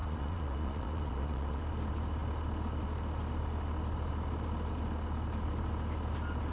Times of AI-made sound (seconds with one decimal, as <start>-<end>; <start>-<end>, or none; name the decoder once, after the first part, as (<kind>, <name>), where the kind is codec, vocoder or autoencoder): 0.0-1.6 (vocoder, Vocos)